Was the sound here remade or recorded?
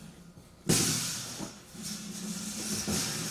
recorded